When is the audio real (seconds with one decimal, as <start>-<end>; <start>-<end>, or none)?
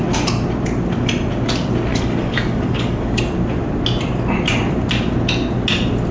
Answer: 0.0-1.9; 3.2-6.1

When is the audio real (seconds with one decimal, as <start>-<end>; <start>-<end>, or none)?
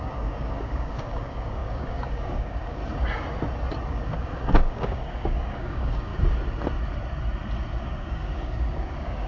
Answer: 2.8-3.9; 6.1-7.8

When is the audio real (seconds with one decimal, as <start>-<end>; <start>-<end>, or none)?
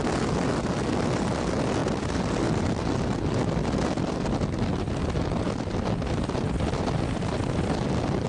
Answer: 0.0-8.3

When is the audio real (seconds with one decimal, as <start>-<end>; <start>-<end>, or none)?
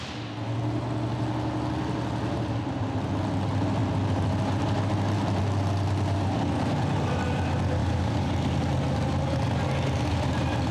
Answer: 0.0-7.8; 8.3-10.7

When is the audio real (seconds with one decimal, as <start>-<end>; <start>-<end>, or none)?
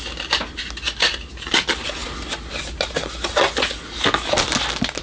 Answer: 0.0-5.0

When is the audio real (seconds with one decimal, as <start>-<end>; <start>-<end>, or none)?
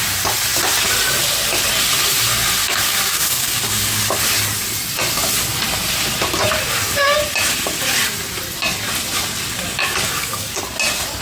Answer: 0.0-2.6; 4.2-9.8; 10.6-11.2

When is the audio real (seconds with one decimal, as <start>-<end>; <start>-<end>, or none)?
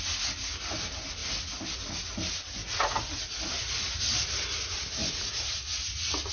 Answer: 0.0-6.3